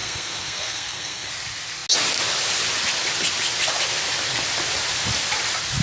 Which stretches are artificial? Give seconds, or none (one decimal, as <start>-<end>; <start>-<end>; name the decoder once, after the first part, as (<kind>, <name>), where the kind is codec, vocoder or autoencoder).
0.0-1.3 (codec, SNAC)